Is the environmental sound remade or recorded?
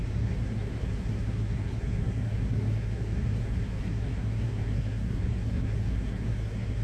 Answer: remade